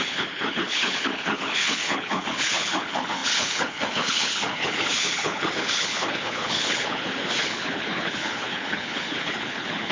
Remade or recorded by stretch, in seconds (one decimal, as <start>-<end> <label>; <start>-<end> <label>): 0.0-9.9 remade